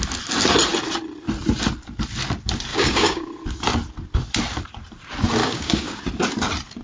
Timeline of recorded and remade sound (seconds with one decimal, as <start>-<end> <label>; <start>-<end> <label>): 0.0-2.7 recorded; 2.7-3.3 remade; 3.3-5.4 recorded; 5.4-6.0 remade; 6.0-6.8 recorded